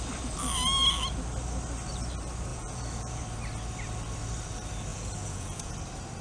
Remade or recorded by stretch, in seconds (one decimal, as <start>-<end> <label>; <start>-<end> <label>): 0.0-2.5 recorded; 2.5-3.2 remade; 3.2-4.9 recorded; 4.9-5.7 remade; 5.7-6.2 recorded